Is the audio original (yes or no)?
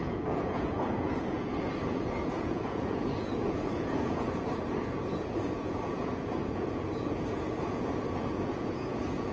no